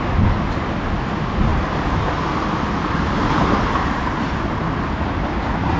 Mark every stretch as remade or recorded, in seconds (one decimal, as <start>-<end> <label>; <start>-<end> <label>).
0.0-5.8 recorded